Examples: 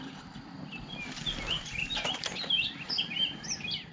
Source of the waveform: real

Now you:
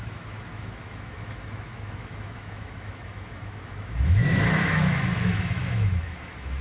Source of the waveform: fake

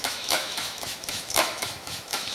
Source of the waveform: fake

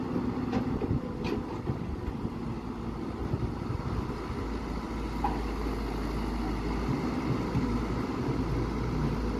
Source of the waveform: real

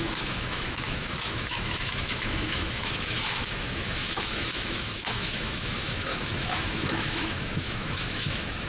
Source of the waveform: fake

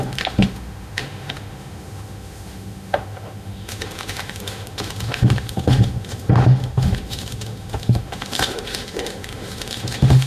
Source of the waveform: fake